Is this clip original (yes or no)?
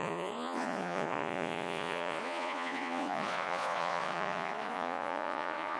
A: no